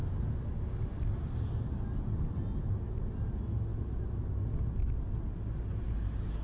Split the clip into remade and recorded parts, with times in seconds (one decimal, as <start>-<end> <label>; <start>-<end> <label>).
0.0-6.4 recorded